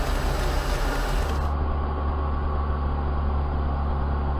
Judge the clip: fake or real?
real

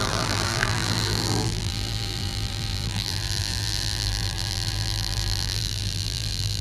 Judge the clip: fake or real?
fake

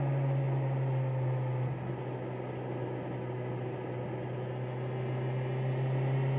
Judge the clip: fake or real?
real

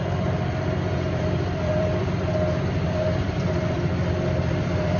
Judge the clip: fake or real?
fake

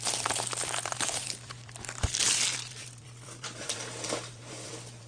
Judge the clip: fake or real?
fake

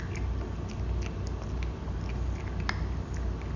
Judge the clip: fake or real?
real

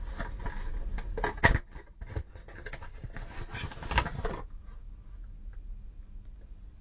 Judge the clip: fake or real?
real